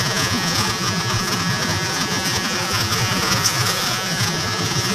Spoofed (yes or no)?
yes